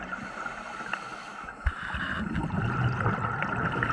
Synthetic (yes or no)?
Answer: no